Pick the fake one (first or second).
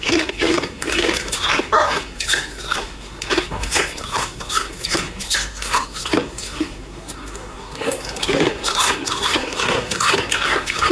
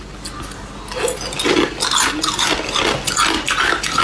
first